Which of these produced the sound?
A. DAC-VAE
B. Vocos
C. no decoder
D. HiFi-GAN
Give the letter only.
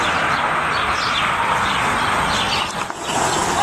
C